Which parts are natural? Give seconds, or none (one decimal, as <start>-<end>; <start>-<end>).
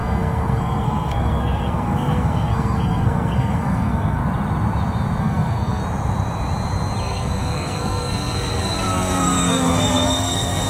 4.2-5.2; 5.8-7.0